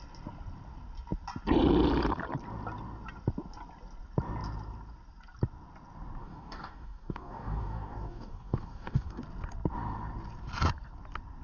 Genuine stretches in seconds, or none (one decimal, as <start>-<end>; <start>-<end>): 0.0-6.2; 9.2-11.4